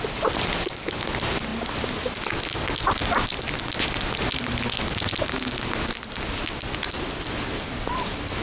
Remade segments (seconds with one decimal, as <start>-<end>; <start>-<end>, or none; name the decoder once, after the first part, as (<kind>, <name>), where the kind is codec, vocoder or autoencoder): none